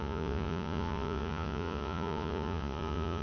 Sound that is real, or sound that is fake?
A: fake